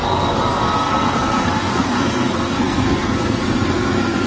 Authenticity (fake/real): fake